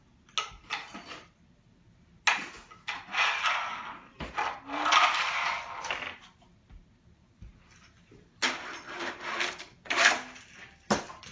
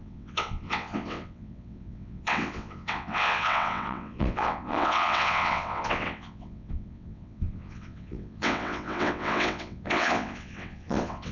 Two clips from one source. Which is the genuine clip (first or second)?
first